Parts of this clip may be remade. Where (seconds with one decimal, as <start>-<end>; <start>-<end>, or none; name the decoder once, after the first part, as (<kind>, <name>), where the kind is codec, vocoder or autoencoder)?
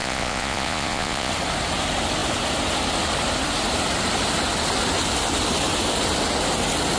0.0-1.3 (vocoder, Vocos)